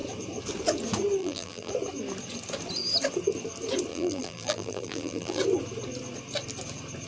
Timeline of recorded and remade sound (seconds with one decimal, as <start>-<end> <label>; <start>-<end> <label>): 0.0-1.2 recorded; 1.2-1.7 remade; 1.7-3.9 recorded; 3.9-5.4 remade; 5.4-7.1 recorded